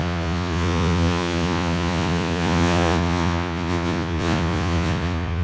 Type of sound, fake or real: fake